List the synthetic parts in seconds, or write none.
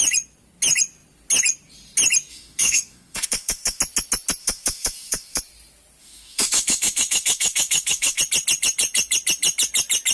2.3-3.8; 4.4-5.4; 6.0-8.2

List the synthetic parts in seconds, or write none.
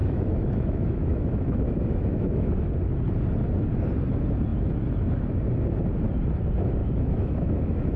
0.0-2.5; 6.8-8.0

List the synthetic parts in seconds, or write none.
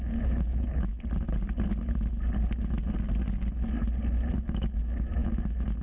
0.0-0.9; 4.4-5.8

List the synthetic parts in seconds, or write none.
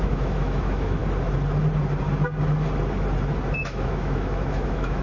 0.0-1.0; 3.6-5.0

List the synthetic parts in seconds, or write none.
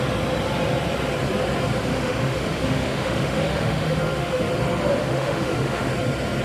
1.9-4.5; 5.0-5.9